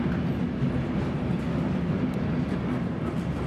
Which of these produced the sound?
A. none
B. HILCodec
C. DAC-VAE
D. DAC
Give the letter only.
A